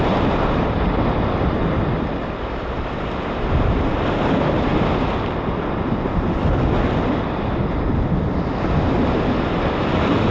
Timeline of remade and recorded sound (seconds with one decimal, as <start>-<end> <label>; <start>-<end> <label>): 0.0-10.3 recorded